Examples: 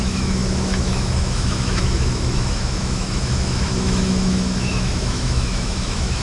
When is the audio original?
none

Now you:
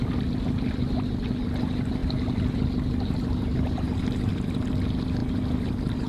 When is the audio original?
0.0-6.1

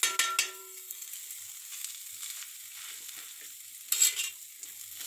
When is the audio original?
0.0-0.6; 1.1-5.1

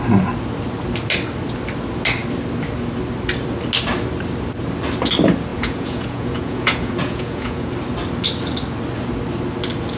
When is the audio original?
0.0-5.5; 7.7-10.0

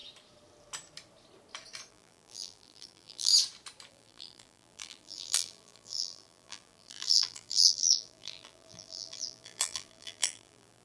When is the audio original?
0.0-1.9; 3.3-3.9